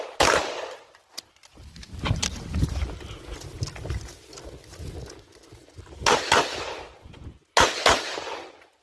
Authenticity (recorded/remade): recorded